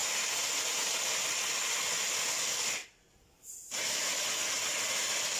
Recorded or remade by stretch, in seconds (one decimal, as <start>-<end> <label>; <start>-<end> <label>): 0.0-5.4 recorded